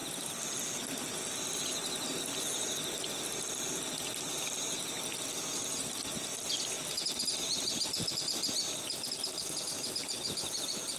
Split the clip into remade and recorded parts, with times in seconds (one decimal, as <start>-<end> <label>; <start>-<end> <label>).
0.0-4.2 recorded; 4.2-11.0 remade